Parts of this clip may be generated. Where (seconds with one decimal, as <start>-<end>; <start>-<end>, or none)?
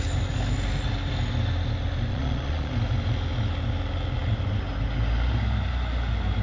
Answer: 2.1-2.7